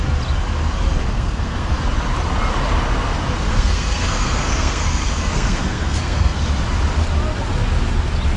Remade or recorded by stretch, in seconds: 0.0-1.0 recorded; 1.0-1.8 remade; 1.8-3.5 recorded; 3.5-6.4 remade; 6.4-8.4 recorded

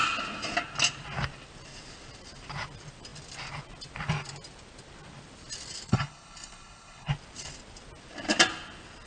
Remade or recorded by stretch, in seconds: 0.0-5.9 recorded; 5.9-7.1 remade; 7.1-9.1 recorded

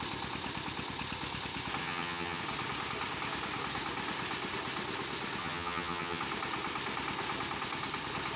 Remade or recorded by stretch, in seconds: 0.0-1.8 recorded; 1.8-2.4 remade; 2.4-5.4 recorded; 5.4-6.2 remade; 6.2-8.4 recorded